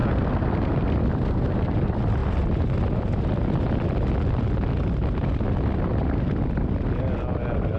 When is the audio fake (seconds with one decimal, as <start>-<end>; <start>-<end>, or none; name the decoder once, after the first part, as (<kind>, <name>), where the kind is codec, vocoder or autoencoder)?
none

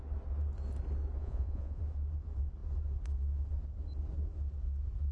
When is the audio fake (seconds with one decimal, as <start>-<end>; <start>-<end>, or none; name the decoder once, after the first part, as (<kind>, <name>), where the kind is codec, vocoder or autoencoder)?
1.2-1.8 (vocoder, Vocos)

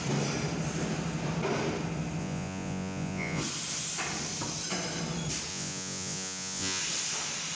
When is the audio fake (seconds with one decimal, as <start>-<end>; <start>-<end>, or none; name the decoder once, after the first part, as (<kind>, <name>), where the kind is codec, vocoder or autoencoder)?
2.2-3.4 (vocoder, Vocos); 5.5-6.8